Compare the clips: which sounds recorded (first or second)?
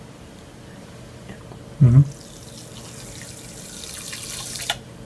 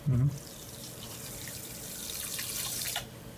first